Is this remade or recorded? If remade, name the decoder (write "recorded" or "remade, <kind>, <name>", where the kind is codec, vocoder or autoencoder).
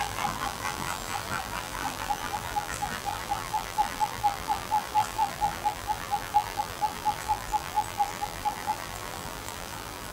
remade, vocoder, BigVGAN v2